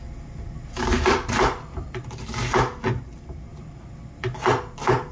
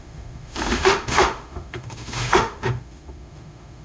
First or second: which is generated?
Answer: second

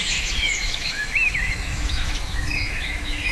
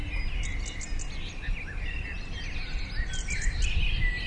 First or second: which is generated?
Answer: first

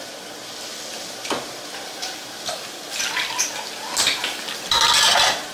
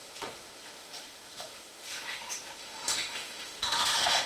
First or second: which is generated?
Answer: second